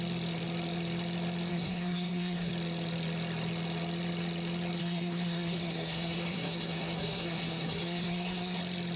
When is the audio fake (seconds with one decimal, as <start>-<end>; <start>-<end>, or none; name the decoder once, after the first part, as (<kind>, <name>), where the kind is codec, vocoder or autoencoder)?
1.5-2.5 (codec, SNAC); 4.8-8.6